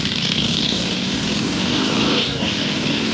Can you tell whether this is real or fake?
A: fake